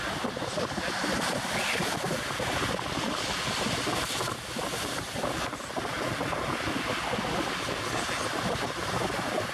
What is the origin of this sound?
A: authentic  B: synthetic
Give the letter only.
A